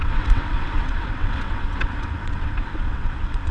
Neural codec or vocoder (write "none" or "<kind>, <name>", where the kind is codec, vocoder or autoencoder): vocoder, WaveNeXt